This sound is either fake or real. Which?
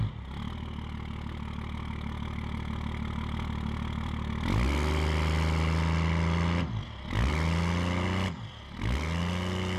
real